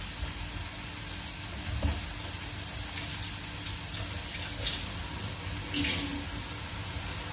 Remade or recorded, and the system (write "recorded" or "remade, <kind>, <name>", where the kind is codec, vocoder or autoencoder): recorded